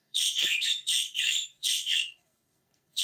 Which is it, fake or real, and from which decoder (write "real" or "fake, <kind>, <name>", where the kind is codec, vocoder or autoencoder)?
fake, codec, SNAC